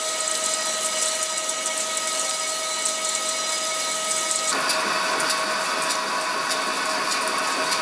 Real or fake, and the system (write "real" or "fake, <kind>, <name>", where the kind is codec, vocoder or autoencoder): real